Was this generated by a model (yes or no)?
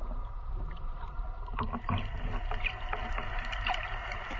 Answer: yes